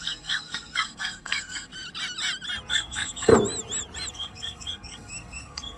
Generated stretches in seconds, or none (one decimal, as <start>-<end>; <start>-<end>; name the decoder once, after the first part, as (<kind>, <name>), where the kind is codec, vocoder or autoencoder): 0.0-1.7 (codec, SNAC); 2.7-3.3; 4.1-5.8